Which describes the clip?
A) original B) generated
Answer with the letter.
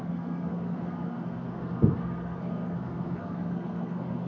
B